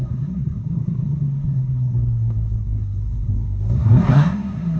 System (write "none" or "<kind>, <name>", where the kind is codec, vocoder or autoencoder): codec, SNAC